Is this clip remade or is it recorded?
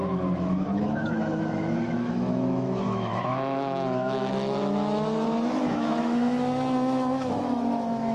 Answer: remade